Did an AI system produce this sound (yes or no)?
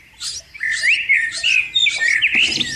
no